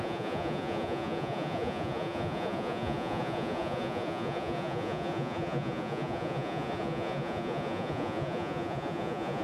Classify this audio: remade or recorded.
remade